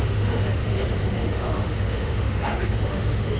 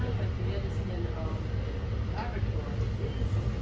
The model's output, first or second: first